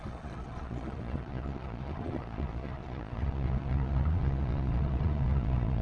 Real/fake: fake